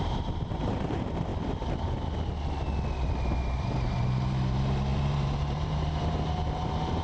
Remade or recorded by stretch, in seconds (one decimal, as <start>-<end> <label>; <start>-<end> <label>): 0.0-1.3 remade; 1.3-3.6 recorded; 3.6-7.0 remade